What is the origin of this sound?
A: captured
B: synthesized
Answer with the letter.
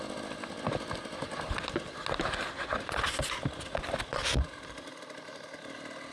A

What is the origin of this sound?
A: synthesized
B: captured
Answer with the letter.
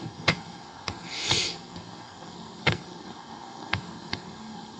A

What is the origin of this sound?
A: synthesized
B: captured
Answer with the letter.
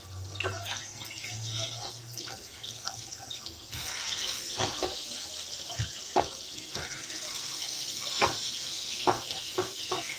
A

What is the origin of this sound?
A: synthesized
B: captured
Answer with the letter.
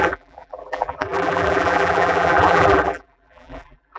A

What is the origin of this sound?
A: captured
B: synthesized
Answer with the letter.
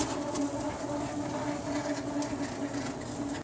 A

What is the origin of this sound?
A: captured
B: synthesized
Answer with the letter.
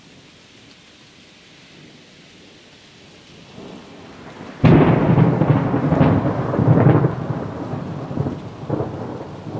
A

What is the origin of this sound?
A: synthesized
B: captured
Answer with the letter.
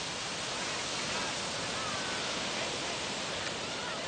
B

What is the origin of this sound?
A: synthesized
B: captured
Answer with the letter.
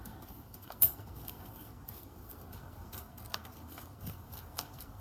A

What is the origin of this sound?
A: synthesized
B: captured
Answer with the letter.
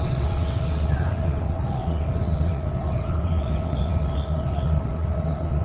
A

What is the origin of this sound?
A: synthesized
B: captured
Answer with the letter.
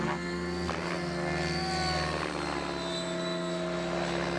B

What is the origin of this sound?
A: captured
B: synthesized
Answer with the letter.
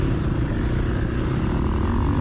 A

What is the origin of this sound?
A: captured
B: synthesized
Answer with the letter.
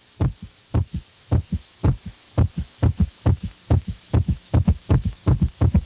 B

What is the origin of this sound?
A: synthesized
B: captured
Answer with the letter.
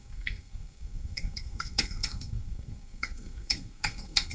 A